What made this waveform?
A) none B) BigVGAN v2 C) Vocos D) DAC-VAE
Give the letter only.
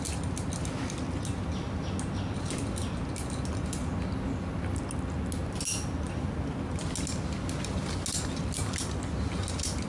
A